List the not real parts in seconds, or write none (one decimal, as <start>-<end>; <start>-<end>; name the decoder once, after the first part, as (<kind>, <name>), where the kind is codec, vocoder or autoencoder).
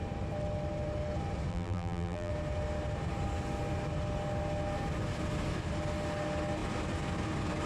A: 1.5-2.3 (vocoder, BigVGAN v2)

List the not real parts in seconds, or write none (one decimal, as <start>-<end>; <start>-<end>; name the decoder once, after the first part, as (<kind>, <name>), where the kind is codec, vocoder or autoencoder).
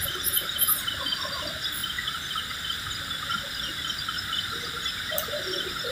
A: none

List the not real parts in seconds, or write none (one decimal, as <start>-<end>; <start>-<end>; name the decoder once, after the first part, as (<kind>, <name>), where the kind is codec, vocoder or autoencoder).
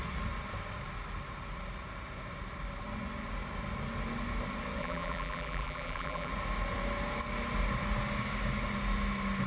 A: 4.8-6.3 (vocoder, BigVGAN v2)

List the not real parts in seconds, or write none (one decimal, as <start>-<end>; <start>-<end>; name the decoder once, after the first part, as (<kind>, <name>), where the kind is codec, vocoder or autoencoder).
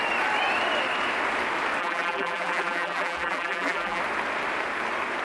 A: 1.8-4.0 (vocoder, BigVGAN v2)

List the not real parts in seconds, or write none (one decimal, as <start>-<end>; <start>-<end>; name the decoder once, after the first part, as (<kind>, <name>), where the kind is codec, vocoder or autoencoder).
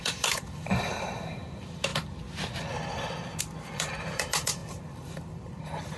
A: 0.0-1.9 (vocoder, BigVGAN v2); 3.4-6.0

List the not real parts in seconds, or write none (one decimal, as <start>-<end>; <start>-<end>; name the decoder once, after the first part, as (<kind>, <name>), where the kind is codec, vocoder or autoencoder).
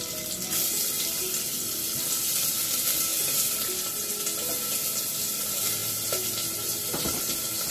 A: none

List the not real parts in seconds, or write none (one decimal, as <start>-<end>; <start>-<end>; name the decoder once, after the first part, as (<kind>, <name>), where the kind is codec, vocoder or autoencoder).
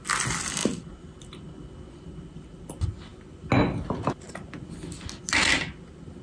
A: 0.6-2.7 (vocoder, BigVGAN v2)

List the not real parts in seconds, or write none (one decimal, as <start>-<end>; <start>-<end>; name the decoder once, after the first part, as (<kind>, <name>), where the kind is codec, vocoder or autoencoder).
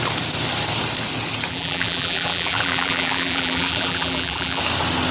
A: 1.5-4.6 (vocoder, BigVGAN v2)